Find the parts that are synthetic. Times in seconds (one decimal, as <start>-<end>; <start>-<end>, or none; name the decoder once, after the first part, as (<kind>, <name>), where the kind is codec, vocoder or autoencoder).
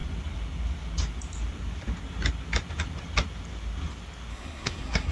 4.3-5.1 (codec, SNAC)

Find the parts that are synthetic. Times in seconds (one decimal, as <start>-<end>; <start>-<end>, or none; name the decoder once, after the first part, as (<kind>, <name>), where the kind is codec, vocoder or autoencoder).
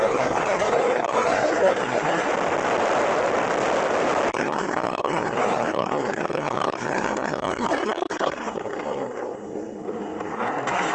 0.0-2.3 (codec, SNAC); 4.3-10.9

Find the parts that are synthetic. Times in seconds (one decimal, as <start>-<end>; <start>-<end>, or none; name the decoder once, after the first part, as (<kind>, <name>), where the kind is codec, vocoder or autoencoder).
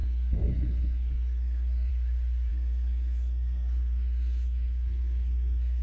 0.0-1.9 (codec, SNAC); 2.5-5.8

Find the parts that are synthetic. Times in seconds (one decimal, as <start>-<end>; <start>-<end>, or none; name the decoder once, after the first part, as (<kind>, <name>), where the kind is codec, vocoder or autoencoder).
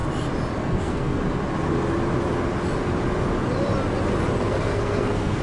0.6-1.2 (codec, SNAC); 4.4-5.4